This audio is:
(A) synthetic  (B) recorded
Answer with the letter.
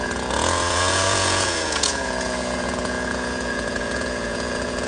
A